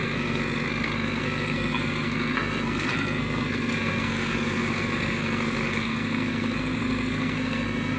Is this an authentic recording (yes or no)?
no